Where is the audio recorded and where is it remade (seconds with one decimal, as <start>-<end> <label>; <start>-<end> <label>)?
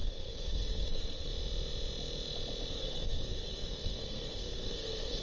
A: 0.0-1.3 remade; 1.3-2.7 recorded; 2.7-5.2 remade